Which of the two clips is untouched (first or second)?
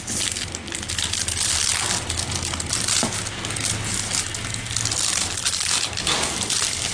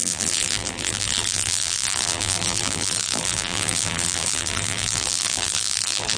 first